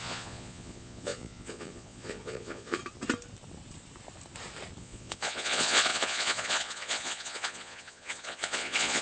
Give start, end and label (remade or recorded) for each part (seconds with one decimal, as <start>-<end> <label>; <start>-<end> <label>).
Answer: 0.0-2.8 remade; 2.8-4.8 recorded; 4.8-9.0 remade

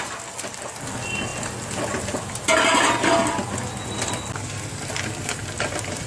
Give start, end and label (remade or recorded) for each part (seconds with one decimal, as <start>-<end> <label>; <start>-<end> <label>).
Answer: 0.0-6.1 recorded